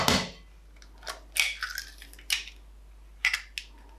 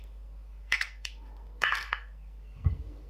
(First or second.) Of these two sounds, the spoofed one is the second